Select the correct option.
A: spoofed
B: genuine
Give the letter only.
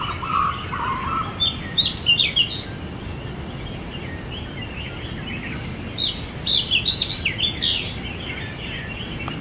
B